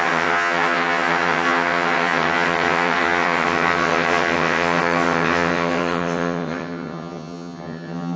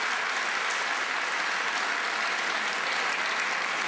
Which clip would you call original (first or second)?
second